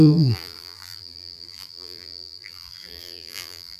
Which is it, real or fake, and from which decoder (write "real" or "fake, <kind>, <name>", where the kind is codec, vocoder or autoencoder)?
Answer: fake, vocoder, BigVGAN v2